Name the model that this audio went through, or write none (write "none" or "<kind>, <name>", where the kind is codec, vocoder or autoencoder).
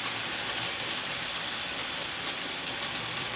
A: vocoder, BigVGAN v2